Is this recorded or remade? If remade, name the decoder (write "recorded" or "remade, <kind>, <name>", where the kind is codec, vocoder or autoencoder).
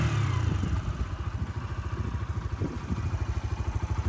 recorded